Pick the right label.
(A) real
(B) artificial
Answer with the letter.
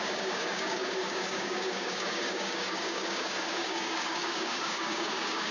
B